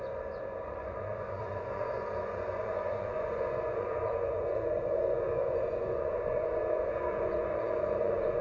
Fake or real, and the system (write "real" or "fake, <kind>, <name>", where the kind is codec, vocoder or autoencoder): fake, vocoder, Vocos